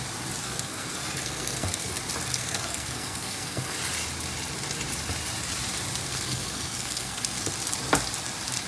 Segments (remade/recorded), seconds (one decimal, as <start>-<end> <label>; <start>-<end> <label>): 0.0-0.4 recorded; 0.4-1.9 remade; 1.9-2.3 recorded; 2.3-3.8 remade; 3.8-6.0 recorded; 6.0-7.5 remade; 7.5-8.7 recorded